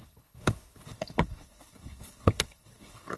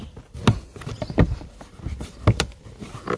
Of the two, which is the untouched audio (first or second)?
second